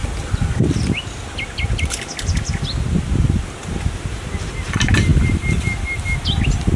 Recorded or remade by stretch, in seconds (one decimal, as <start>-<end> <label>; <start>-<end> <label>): 0.0-6.8 recorded